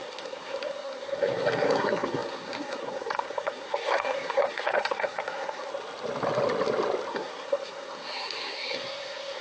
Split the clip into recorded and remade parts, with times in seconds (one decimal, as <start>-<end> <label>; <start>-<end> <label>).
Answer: 0.0-5.7 remade; 5.7-7.1 recorded; 7.1-9.4 remade